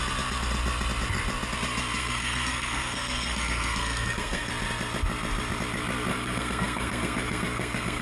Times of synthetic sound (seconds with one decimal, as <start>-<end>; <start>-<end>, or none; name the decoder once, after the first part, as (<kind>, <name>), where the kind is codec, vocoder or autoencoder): 2.0-4.5 (codec, SNAC); 6.1-8.0